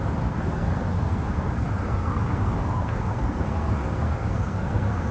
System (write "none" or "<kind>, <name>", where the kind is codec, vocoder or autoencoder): codec, SNAC